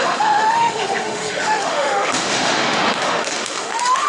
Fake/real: fake